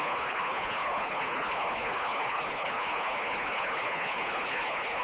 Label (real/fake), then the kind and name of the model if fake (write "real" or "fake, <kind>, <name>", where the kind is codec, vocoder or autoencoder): fake, codec, HILCodec